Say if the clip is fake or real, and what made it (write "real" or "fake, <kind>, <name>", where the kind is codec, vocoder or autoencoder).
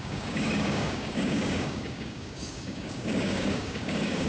fake, codec, DAC